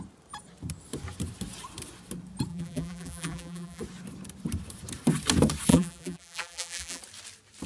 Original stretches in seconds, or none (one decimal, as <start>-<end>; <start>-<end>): 0.0-2.5; 3.8-5.7; 7.0-7.7